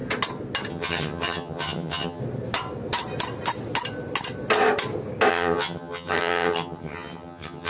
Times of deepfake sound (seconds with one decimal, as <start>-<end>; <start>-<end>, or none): 0.7-2.2; 5.3-7.7